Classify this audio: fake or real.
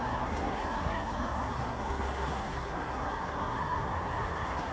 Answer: fake